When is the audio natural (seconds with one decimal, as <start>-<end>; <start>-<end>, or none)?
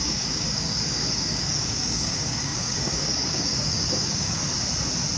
4.4-5.2